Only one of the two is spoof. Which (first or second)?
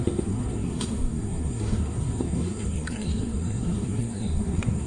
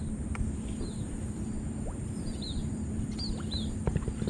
first